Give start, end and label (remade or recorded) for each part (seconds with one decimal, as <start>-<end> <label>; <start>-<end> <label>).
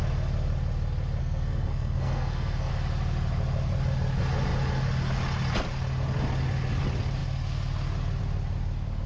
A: 0.0-1.2 recorded; 1.2-2.7 remade; 2.7-9.1 recorded